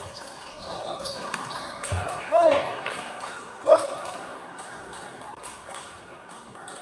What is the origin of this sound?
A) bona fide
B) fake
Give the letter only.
B